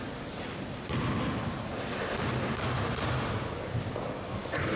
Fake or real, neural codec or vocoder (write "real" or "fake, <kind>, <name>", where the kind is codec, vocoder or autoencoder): real